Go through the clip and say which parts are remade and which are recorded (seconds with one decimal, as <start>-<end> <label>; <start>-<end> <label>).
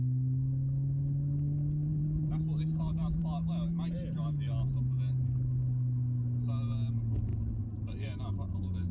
0.0-1.9 recorded; 1.9-3.2 remade; 3.2-7.3 recorded; 7.3-8.3 remade; 8.3-8.9 recorded